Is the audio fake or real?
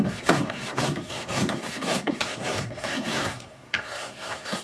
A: fake